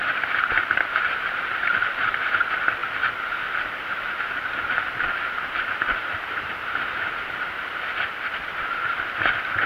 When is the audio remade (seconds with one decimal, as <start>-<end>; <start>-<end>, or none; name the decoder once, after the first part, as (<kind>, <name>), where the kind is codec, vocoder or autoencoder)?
0.0-2.8 (vocoder, BigVGAN v2); 4.1-8.5